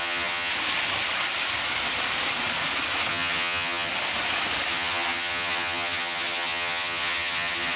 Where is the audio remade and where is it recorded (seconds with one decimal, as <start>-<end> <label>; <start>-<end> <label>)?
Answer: 0.0-0.5 remade; 0.5-3.1 recorded; 3.1-3.9 remade; 3.9-4.7 recorded; 4.7-7.8 remade